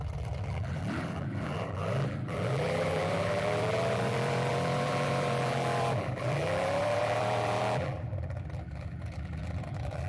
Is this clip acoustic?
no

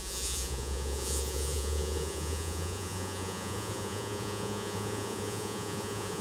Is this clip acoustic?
no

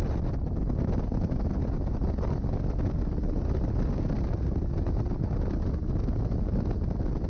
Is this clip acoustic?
yes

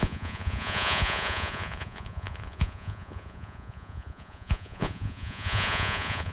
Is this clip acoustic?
no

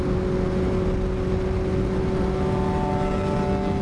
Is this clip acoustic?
yes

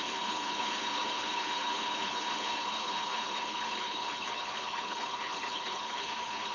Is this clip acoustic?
no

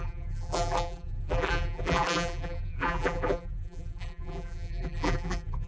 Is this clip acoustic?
no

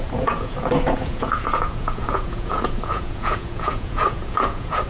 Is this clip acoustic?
no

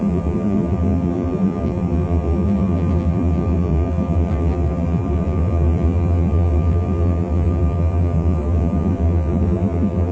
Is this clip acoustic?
no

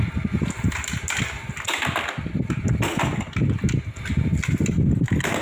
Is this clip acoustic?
yes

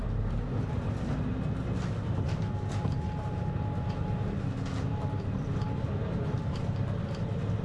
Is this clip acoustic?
yes